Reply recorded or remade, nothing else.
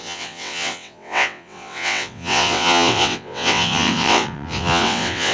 remade